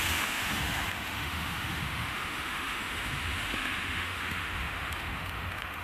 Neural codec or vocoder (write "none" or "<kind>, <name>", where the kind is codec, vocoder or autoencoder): autoencoder, DAC-VAE